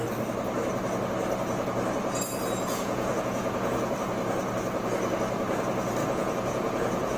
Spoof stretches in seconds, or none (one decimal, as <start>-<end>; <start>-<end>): 2.7-3.9; 6.0-7.2